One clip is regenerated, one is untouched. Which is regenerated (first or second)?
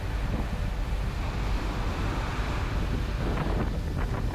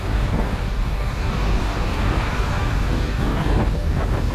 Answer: second